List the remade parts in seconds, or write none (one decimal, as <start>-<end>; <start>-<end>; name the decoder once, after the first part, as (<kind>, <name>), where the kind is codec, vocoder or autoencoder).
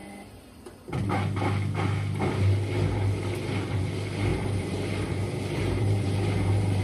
4.3-6.8 (vocoder, BigVGAN v2)